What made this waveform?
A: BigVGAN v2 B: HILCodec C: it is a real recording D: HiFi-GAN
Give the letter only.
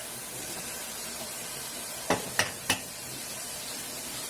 A